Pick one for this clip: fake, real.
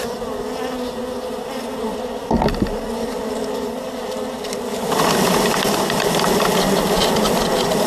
real